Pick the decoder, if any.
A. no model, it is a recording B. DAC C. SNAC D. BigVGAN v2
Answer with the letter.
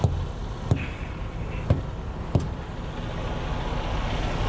A